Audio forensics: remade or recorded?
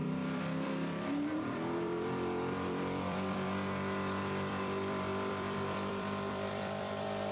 remade